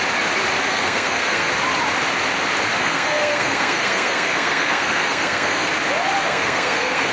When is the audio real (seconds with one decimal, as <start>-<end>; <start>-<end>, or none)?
0.0-0.7; 1.5-2.8; 5.7-6.2